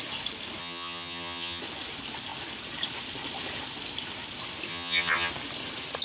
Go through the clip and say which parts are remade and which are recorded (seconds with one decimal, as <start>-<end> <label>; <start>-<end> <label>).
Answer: 0.0-0.6 recorded; 0.6-1.6 remade; 1.6-4.7 recorded; 4.7-5.3 remade; 5.3-6.0 recorded